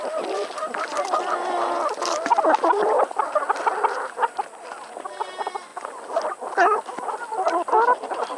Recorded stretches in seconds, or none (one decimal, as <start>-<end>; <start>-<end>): 0.0-8.4